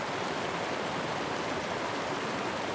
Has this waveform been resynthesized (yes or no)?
yes